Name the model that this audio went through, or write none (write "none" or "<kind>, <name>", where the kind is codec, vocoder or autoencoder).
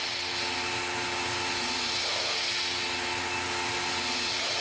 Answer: none